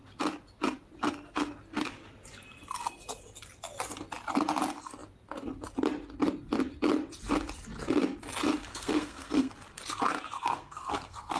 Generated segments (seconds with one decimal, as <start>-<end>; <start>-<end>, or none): 8.7-9.5; 10.4-11.4